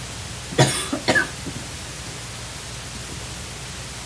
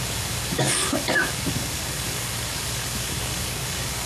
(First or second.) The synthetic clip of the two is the second